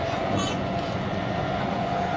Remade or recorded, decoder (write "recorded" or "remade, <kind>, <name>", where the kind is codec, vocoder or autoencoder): remade, vocoder, Vocos